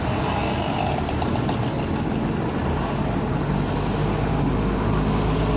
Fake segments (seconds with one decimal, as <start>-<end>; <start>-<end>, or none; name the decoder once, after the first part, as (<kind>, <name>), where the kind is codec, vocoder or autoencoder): none